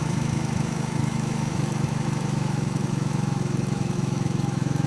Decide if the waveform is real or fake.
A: fake